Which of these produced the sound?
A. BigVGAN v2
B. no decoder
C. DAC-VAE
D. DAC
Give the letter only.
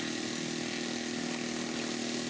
B